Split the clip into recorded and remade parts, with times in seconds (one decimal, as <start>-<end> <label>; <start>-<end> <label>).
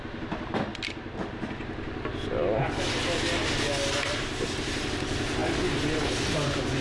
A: 0.0-6.8 recorded